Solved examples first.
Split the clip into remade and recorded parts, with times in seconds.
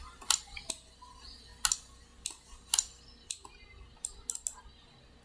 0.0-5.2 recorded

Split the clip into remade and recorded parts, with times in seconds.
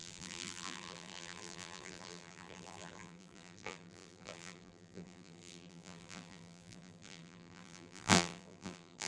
0.0-9.1 remade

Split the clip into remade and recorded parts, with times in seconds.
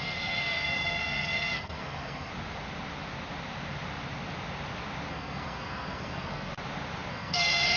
0.0-2.3 remade; 2.3-5.1 recorded; 5.1-6.5 remade; 6.5-7.1 recorded; 7.1-7.8 remade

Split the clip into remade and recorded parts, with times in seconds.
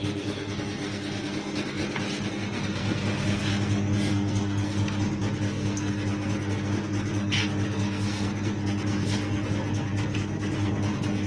0.0-1.8 remade; 1.8-2.3 recorded; 2.3-11.3 remade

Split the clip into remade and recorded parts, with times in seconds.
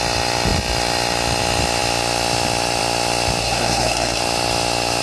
0.0-3.4 recorded; 3.4-4.2 remade; 4.2-5.0 recorded